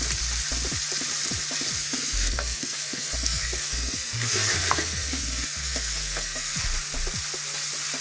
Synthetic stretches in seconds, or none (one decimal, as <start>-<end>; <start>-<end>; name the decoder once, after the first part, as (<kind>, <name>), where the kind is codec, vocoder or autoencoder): 1.8-6.6 (codec, SNAC)